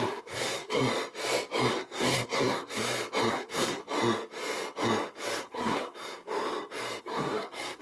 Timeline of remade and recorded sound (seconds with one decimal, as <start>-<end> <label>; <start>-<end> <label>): 0.0-0.8 remade; 0.8-1.7 recorded; 1.7-2.8 remade; 2.8-3.3 recorded; 3.3-3.8 remade; 3.8-5.4 recorded; 5.4-6.2 remade; 6.2-7.0 recorded; 7.0-7.8 remade

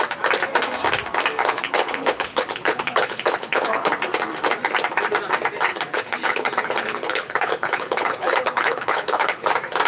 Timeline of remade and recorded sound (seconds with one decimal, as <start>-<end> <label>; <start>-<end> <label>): 0.0-1.4 recorded; 1.4-3.9 remade; 3.9-5.7 recorded; 5.7-9.5 remade; 9.5-9.9 recorded

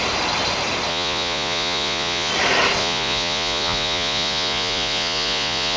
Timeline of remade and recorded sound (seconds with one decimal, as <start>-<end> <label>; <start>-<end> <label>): 0.0-0.9 recorded; 0.9-2.3 remade; 2.3-2.8 recorded; 2.8-5.8 remade

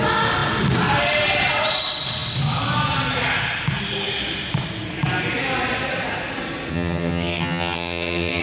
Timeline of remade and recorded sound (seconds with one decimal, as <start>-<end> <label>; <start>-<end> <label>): 0.0-6.7 recorded; 6.7-8.4 remade

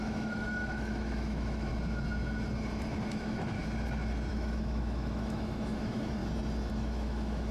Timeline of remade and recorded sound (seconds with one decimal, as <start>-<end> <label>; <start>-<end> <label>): 0.0-1.7 remade; 1.7-3.2 recorded; 3.2-3.6 remade; 3.6-4.3 recorded; 4.3-6.2 remade; 6.2-6.7 recorded; 6.7-7.5 remade

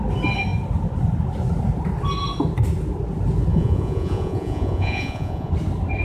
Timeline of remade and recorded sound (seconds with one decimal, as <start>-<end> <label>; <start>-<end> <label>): 0.0-3.5 recorded; 3.5-5.5 remade; 5.5-6.0 recorded